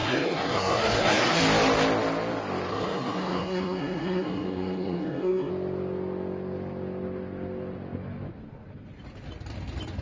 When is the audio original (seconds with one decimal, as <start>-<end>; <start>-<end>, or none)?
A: 1.4-2.7; 5.5-10.0

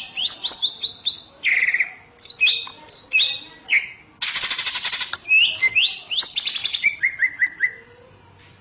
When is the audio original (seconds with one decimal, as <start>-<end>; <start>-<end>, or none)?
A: 0.0-8.6

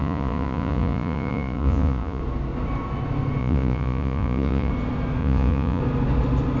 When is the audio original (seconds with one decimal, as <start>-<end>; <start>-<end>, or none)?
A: 2.2-3.4; 4.7-5.2; 5.8-6.6

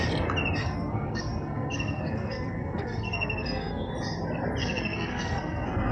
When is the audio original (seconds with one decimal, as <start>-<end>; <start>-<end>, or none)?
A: 0.0-0.6; 3.9-4.6